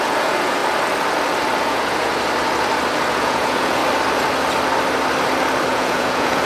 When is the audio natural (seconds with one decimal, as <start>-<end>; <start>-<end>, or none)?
0.6-1.6; 2.1-3.1; 3.8-5.7